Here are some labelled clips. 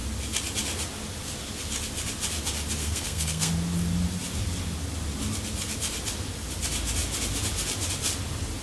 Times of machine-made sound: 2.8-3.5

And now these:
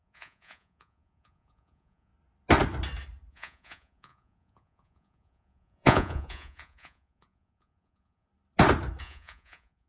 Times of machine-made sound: 0.0-2.1; 3.3-8.3; 9.0-9.9